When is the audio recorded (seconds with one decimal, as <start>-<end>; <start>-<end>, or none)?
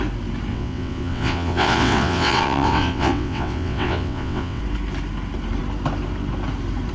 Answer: 0.0-0.5; 4.6-6.9